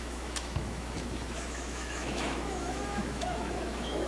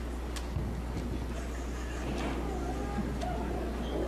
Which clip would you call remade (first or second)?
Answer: first